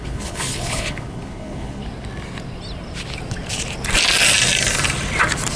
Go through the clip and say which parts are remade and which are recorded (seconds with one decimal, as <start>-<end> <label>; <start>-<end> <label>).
0.0-1.8 remade; 1.8-5.6 recorded